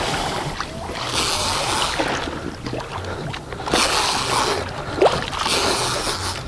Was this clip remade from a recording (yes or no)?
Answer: no